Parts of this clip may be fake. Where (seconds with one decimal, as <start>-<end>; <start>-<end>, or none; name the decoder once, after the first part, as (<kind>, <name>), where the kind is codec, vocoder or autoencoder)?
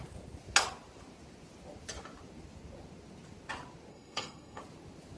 3.9-4.6 (codec, SNAC)